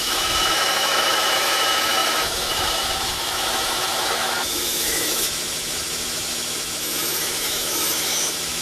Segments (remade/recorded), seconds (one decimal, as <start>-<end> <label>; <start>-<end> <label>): 0.0-8.6 remade

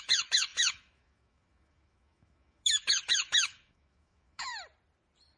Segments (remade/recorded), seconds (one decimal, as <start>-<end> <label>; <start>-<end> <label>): 0.0-4.5 remade; 4.5-5.4 recorded